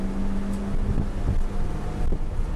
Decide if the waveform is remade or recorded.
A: recorded